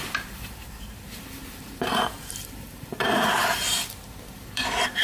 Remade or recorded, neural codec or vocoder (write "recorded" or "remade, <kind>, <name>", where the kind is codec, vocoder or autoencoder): remade, vocoder, BigVGAN v2